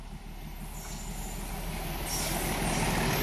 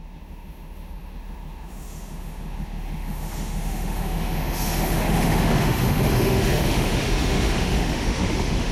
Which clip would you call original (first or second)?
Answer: first